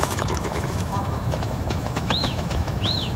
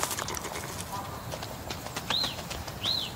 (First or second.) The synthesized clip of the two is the first